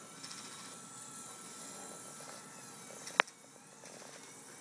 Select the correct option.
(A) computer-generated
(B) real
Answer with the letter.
B